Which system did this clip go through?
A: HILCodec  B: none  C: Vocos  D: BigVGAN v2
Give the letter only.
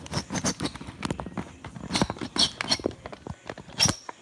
B